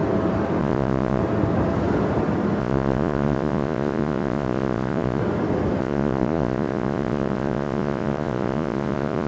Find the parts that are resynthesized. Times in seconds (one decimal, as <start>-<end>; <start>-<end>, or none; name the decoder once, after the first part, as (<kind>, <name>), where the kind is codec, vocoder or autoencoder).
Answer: 0.6-1.2 (vocoder, Vocos); 2.6-5.2; 5.8-9.3